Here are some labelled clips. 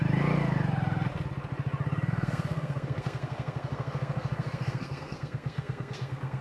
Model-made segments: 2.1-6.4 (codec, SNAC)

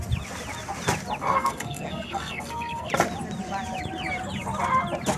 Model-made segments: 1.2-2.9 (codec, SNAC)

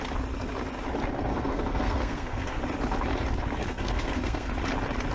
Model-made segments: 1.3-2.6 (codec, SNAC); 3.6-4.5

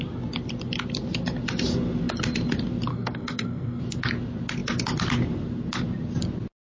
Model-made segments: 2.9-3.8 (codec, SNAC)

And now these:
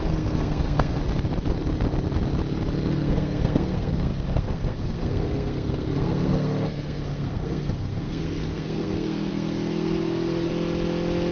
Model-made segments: 0.0-1.0 (codec, SNAC); 2.9-10.5